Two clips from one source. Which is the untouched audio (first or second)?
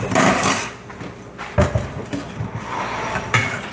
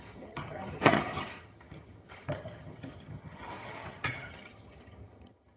first